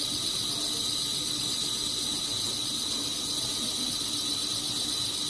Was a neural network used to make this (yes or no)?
no